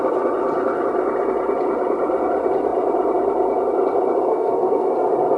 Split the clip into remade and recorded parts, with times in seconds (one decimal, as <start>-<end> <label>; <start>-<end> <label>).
0.0-4.3 recorded; 4.3-4.9 remade; 4.9-5.4 recorded